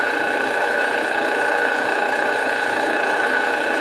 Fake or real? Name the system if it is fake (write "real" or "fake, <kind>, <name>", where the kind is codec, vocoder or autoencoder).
fake, codec, HILCodec